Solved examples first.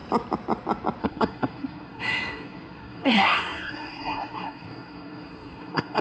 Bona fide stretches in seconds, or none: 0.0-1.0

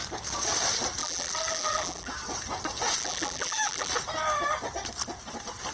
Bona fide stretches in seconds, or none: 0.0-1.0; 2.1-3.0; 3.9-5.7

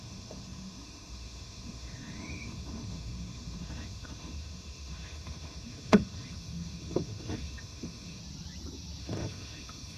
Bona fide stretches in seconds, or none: 8.2-9.0

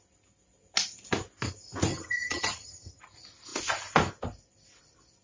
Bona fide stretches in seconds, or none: 0.0-1.9; 3.0-5.2

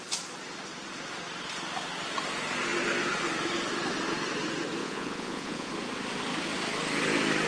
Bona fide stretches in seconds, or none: 0.0-4.8; 5.7-7.5